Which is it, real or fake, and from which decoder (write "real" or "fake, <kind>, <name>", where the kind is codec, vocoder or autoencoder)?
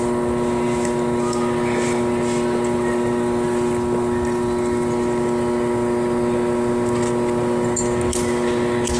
real